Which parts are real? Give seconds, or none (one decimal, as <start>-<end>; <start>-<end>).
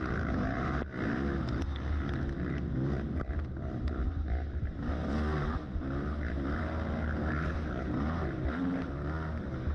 0.0-9.7